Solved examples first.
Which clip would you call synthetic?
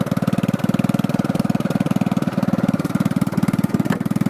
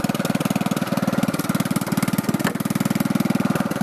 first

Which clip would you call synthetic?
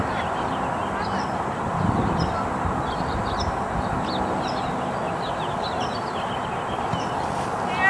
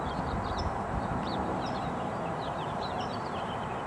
second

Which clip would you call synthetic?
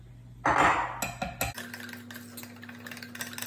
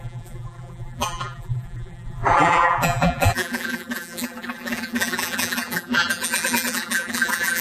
second